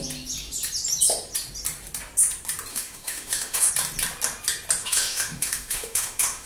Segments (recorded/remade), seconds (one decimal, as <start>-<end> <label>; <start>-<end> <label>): 0.0-2.7 recorded; 2.7-3.7 remade; 3.7-4.8 recorded; 4.8-6.5 remade